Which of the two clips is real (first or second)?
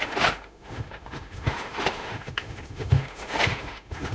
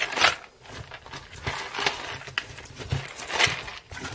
second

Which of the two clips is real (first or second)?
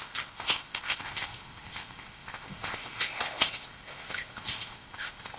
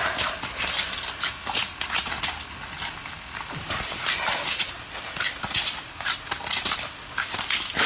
second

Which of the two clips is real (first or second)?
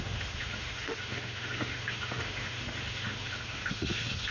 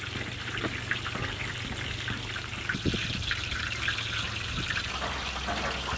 second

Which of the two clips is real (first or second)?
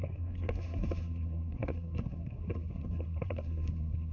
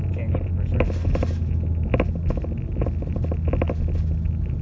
second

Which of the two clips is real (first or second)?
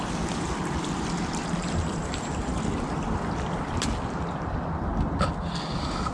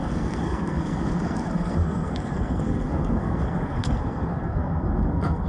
first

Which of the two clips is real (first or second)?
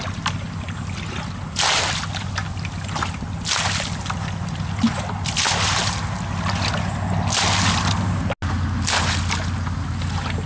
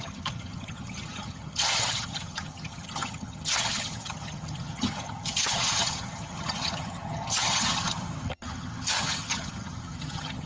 first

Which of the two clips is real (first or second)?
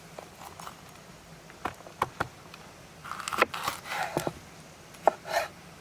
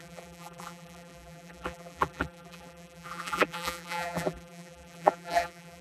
first